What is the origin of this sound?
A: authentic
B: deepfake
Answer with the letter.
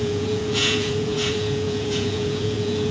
B